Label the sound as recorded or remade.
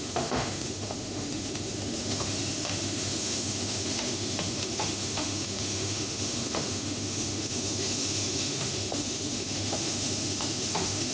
remade